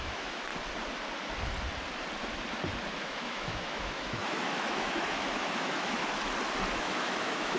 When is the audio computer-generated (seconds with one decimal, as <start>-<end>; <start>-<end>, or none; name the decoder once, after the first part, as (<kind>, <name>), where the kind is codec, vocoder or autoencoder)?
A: 0.0-0.5 (autoencoder, DAC-VAE); 3.0-6.0; 6.8-7.6